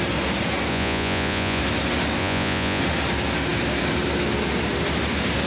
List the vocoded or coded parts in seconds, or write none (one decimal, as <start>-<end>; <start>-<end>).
0.7-1.6; 2.2-2.8